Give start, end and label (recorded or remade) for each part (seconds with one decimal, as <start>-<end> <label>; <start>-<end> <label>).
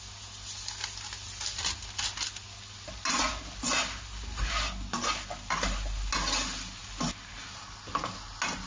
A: 0.0-8.7 recorded